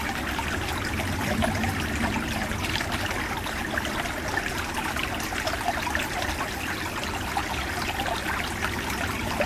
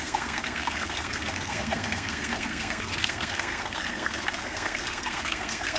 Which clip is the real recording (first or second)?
first